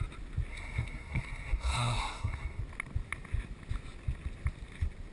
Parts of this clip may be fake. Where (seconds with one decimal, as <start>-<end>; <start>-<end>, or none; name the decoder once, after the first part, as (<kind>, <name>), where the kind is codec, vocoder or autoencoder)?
0.5-2.6 (codec, SNAC)